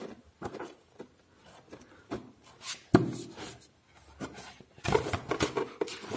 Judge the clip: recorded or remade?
recorded